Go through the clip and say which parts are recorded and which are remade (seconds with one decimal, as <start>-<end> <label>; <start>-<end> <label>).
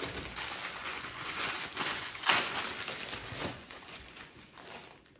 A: 0.0-0.8 recorded; 0.8-2.6 remade; 2.6-3.4 recorded; 3.4-4.6 remade; 4.6-5.2 recorded